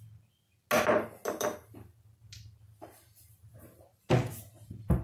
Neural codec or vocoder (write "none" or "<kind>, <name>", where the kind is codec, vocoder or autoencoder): none